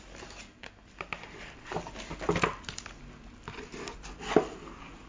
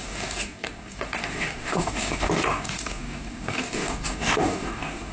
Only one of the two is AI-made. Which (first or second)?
second